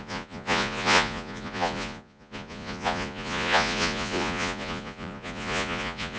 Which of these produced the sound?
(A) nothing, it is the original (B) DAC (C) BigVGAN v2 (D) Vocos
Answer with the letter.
D